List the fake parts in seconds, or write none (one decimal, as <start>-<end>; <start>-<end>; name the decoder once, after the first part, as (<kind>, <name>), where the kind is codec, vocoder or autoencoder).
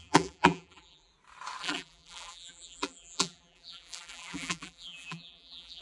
0.0-1.1 (vocoder, BigVGAN v2); 1.6-5.8